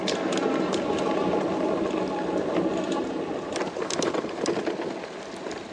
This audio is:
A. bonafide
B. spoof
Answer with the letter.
A